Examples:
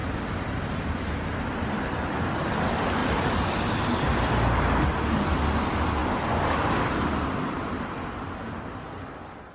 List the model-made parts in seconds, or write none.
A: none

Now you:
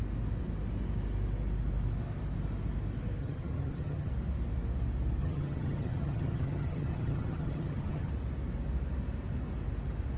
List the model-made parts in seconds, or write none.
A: 3.2-4.1 (vocoder, HiFi-GAN); 5.2-8.1

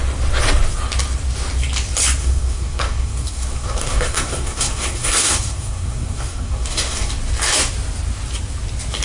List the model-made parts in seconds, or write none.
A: 2.2-7.1 (codec, SNAC)

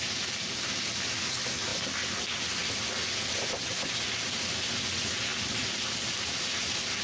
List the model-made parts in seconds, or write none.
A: none

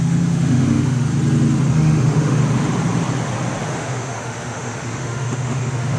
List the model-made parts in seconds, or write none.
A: 0.0-1.1 (autoencoder, DAC-VAE); 1.7-2.4; 3.6-6.0

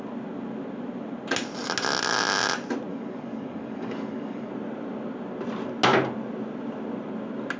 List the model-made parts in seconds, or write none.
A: 2.9-4.5 (codec, DAC)